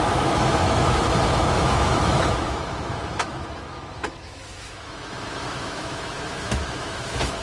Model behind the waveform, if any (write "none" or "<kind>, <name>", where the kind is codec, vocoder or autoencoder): autoencoder, DAC-VAE